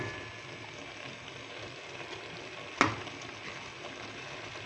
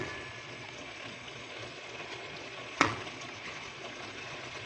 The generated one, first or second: second